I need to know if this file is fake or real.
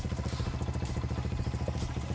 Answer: real